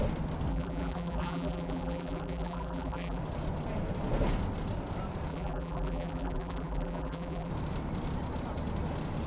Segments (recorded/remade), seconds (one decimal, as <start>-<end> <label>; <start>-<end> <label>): 0.0-0.5 recorded; 0.5-3.2 remade; 3.2-5.3 recorded; 5.3-7.5 remade; 7.5-9.3 recorded